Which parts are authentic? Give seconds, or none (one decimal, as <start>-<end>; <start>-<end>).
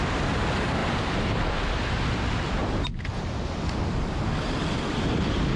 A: 0.0-5.6